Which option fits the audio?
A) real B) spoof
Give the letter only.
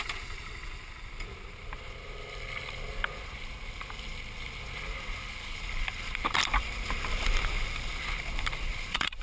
B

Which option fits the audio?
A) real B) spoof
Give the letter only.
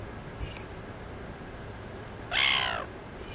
A